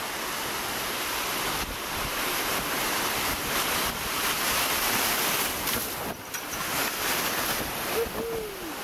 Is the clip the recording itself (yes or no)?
yes